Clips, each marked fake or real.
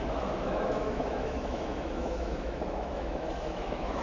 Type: fake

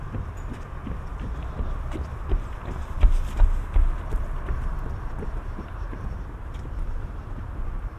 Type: fake